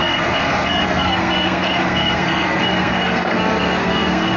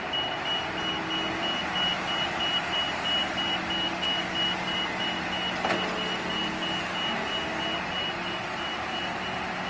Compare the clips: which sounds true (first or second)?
second